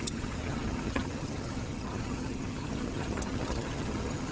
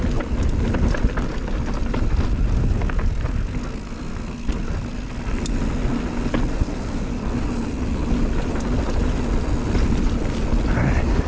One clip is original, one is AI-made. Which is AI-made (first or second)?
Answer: first